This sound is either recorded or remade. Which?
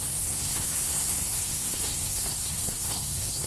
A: remade